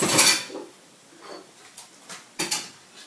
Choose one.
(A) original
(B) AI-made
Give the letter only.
A